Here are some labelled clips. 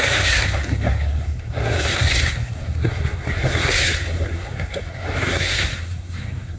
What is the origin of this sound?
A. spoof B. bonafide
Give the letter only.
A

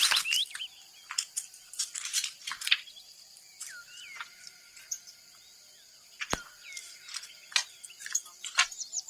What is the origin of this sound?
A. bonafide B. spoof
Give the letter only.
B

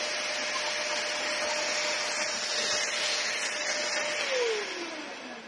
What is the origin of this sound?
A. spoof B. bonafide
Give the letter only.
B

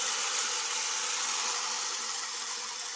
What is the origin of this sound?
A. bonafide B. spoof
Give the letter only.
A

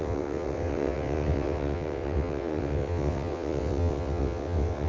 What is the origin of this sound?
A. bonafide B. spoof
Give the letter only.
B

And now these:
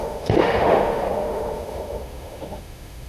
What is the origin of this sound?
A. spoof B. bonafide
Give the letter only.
A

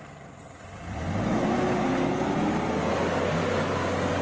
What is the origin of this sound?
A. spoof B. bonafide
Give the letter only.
B